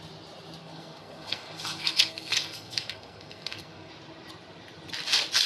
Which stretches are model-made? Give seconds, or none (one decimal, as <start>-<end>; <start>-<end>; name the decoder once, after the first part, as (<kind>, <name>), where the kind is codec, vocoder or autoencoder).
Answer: 0.6-3.9 (codec, SNAC)